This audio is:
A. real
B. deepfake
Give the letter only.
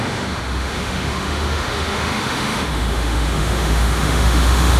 B